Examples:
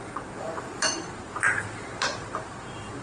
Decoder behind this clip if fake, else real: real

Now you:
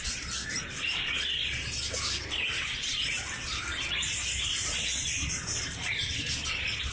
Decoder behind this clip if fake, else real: real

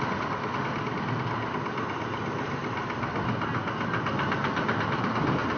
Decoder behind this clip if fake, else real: real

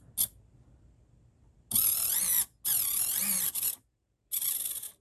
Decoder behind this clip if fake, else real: real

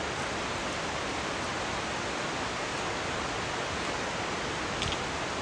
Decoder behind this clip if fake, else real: real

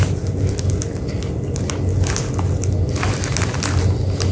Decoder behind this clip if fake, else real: real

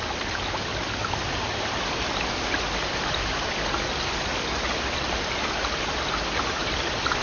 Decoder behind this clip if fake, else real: real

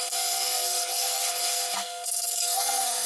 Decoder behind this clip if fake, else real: fake, codec, SNAC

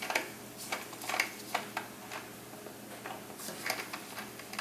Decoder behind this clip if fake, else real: real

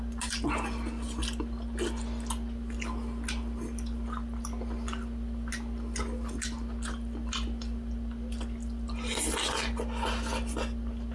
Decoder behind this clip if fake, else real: real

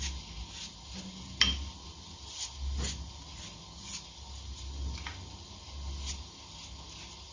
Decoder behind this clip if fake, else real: real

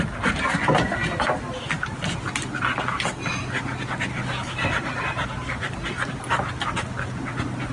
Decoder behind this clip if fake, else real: real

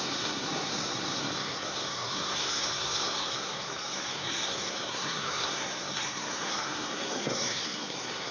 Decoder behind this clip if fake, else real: fake, codec, SNAC